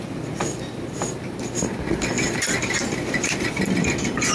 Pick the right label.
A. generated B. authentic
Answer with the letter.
A